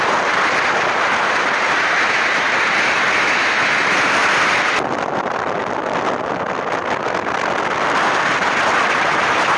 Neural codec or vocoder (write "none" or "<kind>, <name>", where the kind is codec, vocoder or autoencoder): none